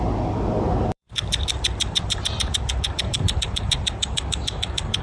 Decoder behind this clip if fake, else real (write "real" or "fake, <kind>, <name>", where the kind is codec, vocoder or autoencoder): fake, vocoder, BigVGAN v2